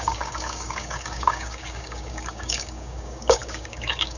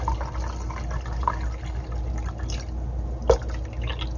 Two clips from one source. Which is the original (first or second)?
second